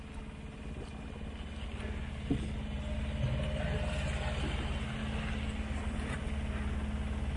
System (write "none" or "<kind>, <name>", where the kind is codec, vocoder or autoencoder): none